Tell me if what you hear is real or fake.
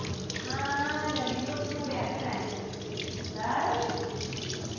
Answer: real